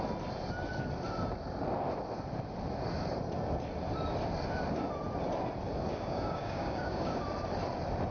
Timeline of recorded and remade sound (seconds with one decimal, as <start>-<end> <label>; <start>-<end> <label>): 0.0-5.9 recorded; 5.9-7.2 remade; 7.2-8.1 recorded